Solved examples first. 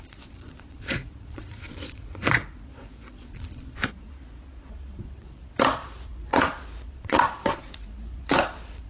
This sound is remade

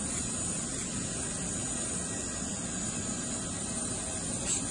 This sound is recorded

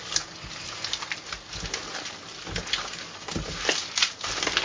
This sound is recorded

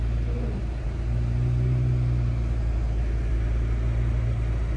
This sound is recorded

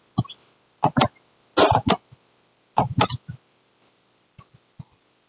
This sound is recorded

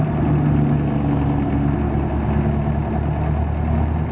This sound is recorded